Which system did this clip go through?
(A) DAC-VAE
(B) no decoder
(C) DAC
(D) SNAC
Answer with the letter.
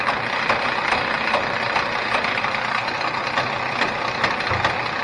B